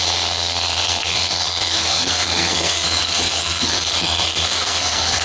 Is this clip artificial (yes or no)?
yes